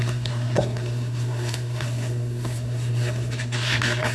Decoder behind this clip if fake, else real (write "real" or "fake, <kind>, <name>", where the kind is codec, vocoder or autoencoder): fake, codec, SNAC